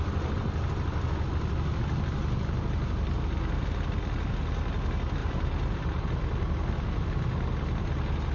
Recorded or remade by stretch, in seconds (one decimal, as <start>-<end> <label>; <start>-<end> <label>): 0.0-5.2 recorded; 5.2-5.8 remade; 5.8-8.3 recorded